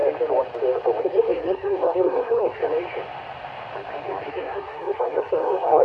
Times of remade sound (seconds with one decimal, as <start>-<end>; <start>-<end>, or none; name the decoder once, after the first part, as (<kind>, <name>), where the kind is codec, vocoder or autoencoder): 1.0-2.6 (codec, SNAC); 4.3-5.8